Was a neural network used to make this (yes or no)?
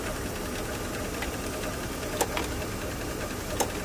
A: no